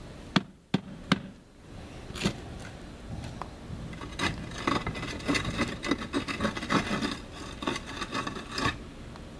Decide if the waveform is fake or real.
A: real